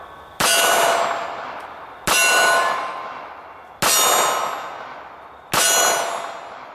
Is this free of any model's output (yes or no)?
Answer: yes